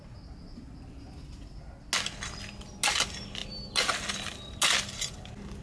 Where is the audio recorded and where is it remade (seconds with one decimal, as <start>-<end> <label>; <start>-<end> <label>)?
0.0-5.6 recorded